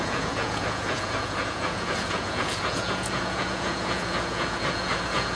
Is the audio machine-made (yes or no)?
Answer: yes